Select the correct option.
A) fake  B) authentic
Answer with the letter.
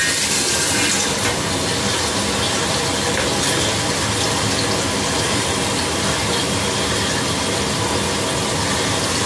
B